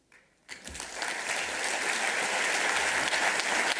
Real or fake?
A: fake